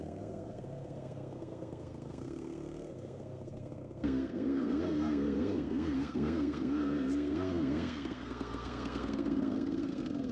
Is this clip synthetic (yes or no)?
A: yes